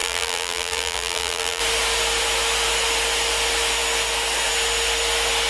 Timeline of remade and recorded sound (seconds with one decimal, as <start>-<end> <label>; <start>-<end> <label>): 0.0-1.6 remade; 1.6-5.5 recorded